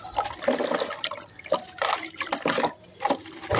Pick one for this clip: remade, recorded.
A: recorded